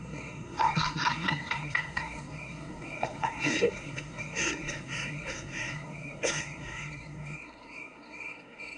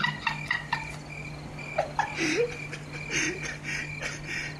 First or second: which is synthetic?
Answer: first